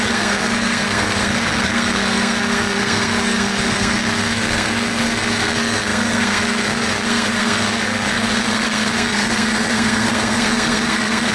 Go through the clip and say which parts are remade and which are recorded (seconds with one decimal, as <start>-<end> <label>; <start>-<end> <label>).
0.0-11.3 remade